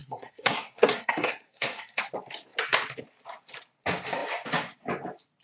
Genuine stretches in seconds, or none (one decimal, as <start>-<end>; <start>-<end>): 2.1-5.4